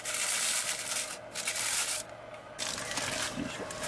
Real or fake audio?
real